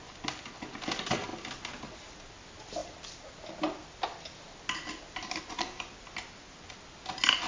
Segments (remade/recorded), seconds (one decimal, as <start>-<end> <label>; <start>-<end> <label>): 0.0-7.5 recorded